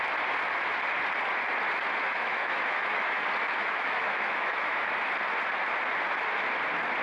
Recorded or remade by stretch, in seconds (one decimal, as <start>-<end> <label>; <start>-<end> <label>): 0.0-2.0 recorded; 2.0-3.2 remade; 3.2-3.6 recorded; 3.6-4.9 remade; 4.9-7.0 recorded

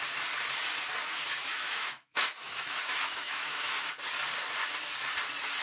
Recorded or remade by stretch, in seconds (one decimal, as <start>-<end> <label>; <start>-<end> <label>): 0.0-1.5 recorded; 1.5-3.9 remade; 3.9-5.6 recorded

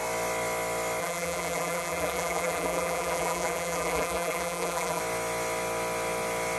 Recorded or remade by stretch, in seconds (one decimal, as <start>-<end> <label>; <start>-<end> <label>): 0.0-1.0 recorded; 1.0-5.0 remade; 5.0-6.6 recorded

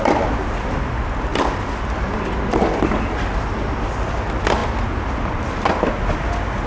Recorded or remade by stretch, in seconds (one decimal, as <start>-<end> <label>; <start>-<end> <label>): 0.0-6.7 recorded

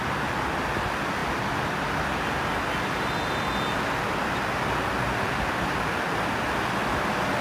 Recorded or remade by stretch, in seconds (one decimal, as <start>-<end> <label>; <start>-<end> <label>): 0.0-7.4 recorded